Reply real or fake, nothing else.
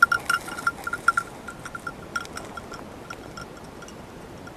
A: real